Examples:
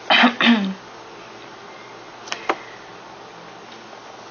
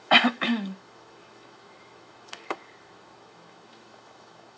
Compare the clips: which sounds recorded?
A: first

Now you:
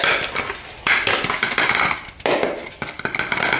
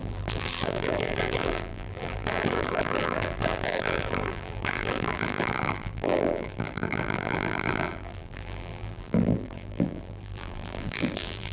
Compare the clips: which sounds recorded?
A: first